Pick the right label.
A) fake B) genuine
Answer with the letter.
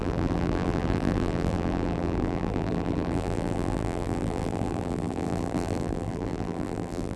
A